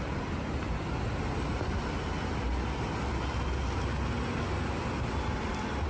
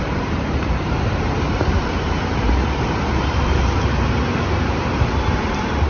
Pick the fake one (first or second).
second